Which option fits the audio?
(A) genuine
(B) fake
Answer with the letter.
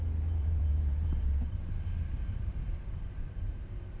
B